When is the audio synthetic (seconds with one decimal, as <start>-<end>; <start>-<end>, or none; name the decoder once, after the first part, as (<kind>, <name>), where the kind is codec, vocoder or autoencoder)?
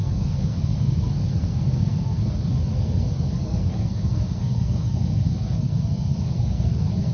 0.0-7.1 (codec, SNAC)